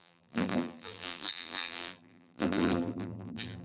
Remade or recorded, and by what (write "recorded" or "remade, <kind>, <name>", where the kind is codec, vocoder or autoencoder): remade, vocoder, BigVGAN v2